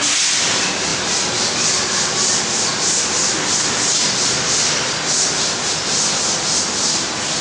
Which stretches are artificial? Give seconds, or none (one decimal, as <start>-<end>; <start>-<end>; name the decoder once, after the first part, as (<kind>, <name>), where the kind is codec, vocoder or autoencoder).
0.9-1.9 (vocoder, BigVGAN v2)